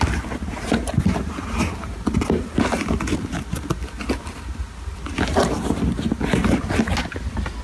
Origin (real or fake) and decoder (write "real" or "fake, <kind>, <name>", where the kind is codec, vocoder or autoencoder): real